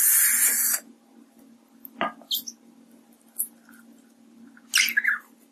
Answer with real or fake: real